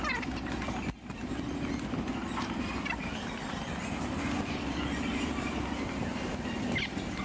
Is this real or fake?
fake